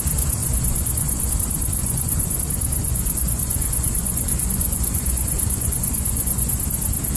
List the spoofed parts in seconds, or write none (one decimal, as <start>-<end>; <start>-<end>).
0.4-1.3; 1.8-2.4; 2.8-6.6